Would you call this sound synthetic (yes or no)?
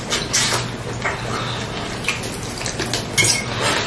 no